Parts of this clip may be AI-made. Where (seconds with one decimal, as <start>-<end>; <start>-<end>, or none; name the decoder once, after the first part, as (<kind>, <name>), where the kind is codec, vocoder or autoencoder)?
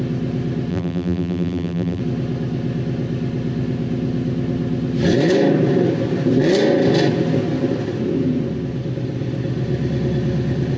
0.7-2.0 (vocoder, BigVGAN v2)